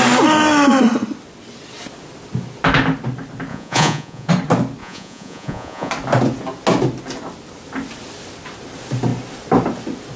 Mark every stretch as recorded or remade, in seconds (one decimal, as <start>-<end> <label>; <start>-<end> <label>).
0.0-3.5 recorded; 3.5-4.3 remade; 4.3-4.8 recorded; 4.8-5.9 remade; 5.9-10.2 recorded